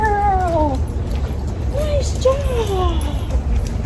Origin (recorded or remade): recorded